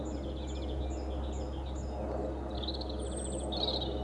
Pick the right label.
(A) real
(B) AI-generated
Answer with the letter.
A